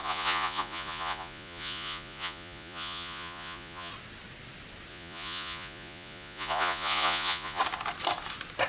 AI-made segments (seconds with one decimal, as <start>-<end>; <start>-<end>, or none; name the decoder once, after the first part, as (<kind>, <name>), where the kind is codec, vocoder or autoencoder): 0.0-3.9 (vocoder, Vocos); 4.9-7.6